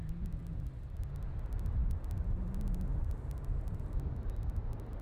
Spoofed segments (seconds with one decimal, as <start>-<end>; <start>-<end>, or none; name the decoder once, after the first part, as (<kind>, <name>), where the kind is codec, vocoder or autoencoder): none